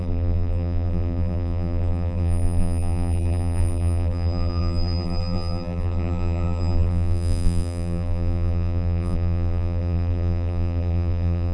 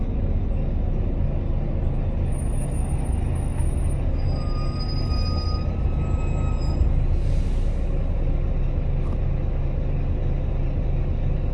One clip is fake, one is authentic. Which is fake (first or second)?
first